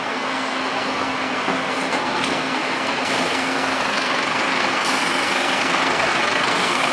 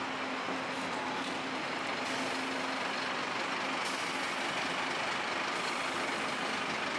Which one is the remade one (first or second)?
first